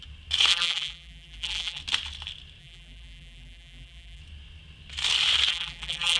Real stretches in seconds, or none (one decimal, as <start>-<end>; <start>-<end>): 0.0-0.5; 1.8-2.6; 4.2-5.5